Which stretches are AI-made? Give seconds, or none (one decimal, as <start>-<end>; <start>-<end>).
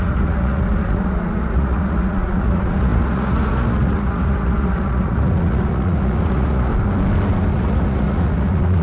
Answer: 0.0-6.7; 7.5-8.8